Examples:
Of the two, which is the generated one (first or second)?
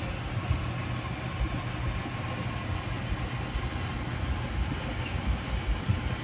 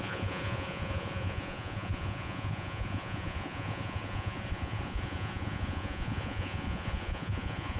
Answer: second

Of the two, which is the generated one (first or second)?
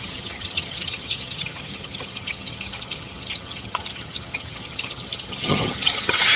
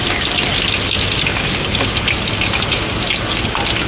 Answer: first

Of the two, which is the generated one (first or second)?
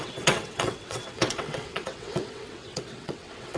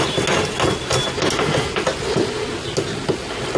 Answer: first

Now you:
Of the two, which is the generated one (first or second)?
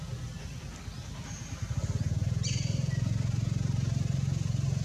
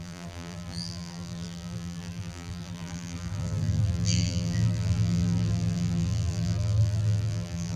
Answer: second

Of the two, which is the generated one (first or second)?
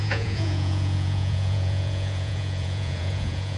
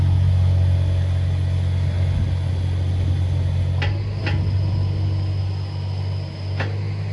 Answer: first